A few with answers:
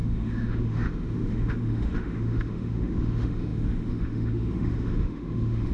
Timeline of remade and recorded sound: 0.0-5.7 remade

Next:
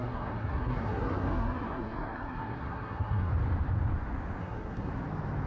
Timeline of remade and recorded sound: 0.0-3.3 remade; 3.3-4.4 recorded; 4.4-4.9 remade; 4.9-5.5 recorded

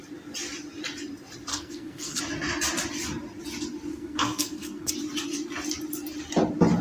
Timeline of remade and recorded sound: 0.0-1.5 recorded; 1.5-2.2 remade; 2.2-3.9 recorded; 3.9-4.9 remade; 4.9-6.8 recorded